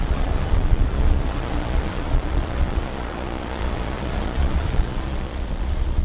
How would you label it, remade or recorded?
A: remade